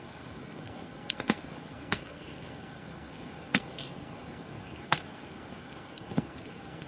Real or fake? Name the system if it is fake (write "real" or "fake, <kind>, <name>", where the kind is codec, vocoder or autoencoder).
fake, codec, SNAC